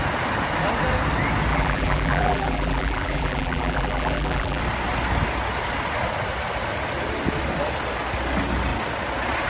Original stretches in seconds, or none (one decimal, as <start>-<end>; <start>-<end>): 0.0-1.5; 4.6-9.5